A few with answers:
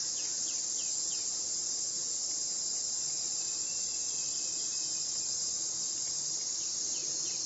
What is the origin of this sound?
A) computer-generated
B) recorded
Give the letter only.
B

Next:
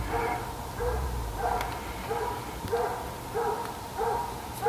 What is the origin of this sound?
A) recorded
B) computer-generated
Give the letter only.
A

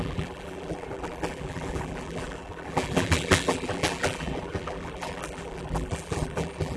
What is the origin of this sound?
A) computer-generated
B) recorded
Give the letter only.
A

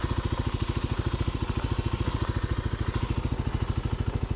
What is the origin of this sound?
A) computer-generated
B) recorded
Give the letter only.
B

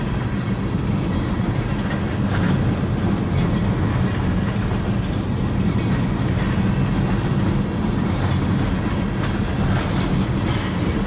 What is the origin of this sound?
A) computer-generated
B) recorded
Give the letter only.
B